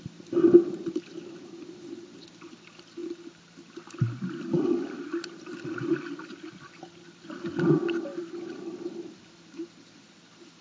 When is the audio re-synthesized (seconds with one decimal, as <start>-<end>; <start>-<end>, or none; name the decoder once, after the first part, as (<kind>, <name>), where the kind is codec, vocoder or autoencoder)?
none

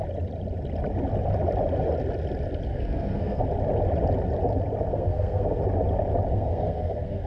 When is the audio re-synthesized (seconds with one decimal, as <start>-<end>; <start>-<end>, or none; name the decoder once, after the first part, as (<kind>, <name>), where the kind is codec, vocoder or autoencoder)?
2.7-3.4 (codec, SNAC); 4.9-5.6; 6.3-7.3